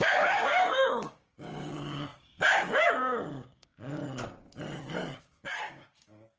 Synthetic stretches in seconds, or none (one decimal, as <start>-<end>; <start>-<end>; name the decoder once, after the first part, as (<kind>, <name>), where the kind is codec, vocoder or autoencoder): 0.0-4.0 (codec, DAC); 5.2-6.4